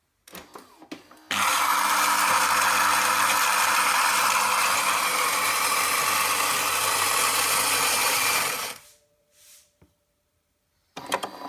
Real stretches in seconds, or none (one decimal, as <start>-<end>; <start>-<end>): 0.0-8.0; 10.6-11.5